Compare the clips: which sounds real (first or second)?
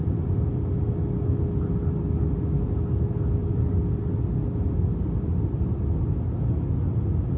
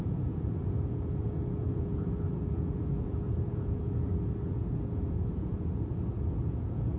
first